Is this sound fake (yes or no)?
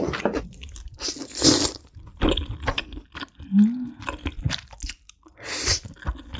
no